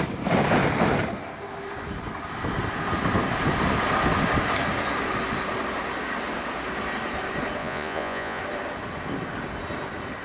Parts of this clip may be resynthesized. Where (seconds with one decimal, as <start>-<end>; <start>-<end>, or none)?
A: 7.6-8.4